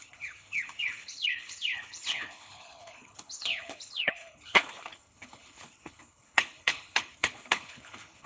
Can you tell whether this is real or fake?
fake